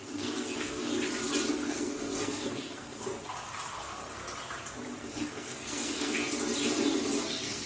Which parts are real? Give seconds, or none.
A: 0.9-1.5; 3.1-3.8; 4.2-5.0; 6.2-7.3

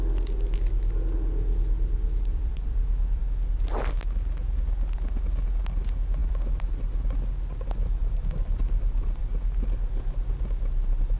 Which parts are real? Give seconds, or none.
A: 0.0-2.3; 3.2-6.2; 6.7-11.2

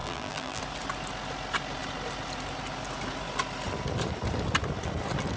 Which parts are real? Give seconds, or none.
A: 0.6-5.4